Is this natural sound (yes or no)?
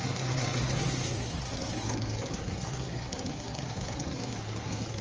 no